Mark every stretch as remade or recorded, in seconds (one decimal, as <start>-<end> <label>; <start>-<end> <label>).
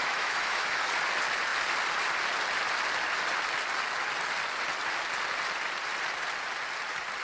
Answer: 0.0-0.9 remade; 0.9-7.2 recorded